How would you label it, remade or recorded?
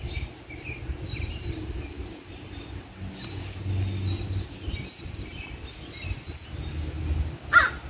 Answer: recorded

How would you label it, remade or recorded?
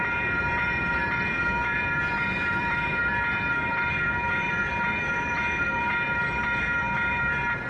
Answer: remade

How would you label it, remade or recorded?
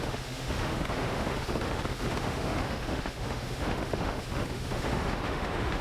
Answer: remade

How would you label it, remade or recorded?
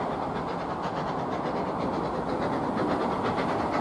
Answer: recorded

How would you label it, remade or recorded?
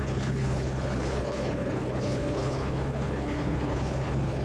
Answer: remade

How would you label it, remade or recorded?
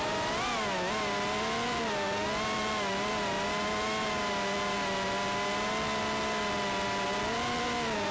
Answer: recorded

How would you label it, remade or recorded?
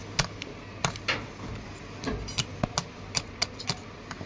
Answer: recorded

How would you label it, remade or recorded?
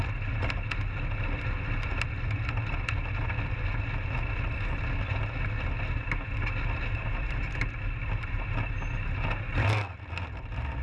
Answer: recorded